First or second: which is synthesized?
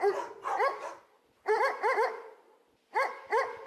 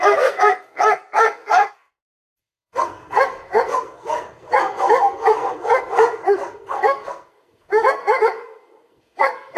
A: second